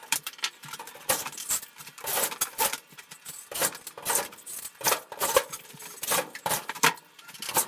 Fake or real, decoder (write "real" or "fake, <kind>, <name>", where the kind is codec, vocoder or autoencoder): fake, vocoder, BigVGAN v2